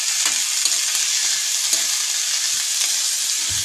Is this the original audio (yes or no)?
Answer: yes